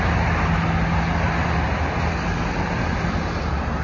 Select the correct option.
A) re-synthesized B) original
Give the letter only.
B